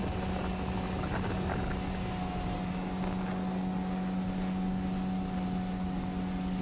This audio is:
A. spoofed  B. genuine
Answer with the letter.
B